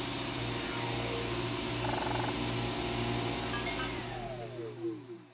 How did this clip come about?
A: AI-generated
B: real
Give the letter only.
B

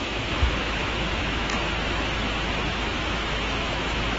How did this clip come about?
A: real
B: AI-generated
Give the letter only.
B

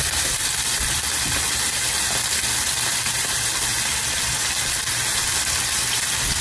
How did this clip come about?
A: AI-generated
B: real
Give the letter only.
B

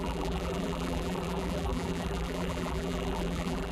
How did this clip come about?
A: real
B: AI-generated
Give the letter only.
B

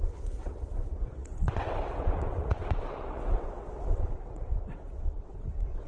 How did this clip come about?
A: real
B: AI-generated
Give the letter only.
B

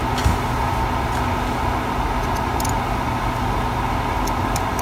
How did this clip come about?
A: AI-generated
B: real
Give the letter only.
B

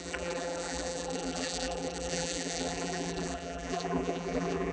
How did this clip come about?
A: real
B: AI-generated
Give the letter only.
B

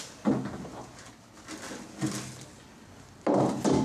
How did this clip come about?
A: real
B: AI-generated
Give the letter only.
A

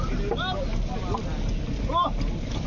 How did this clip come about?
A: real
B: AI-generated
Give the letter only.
A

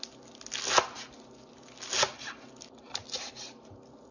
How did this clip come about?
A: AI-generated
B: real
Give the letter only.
B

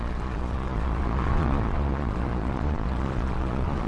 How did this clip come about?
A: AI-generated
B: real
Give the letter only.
A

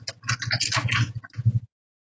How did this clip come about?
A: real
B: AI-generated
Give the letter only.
A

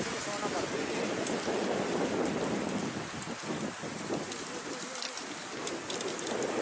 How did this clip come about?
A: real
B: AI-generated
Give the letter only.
A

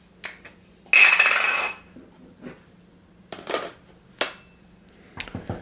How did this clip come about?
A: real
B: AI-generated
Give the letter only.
A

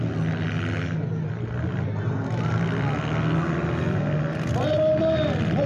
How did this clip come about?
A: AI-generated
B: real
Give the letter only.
B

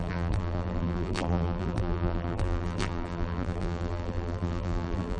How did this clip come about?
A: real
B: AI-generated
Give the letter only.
B